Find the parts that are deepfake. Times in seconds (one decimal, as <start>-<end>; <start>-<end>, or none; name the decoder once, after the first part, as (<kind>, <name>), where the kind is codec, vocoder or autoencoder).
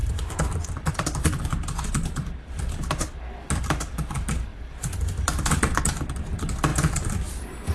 0.0-2.6 (vocoder, BigVGAN v2); 4.5-5.8; 6.7-7.7